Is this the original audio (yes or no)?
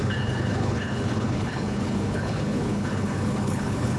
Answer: no